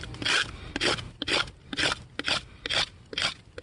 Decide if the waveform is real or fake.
real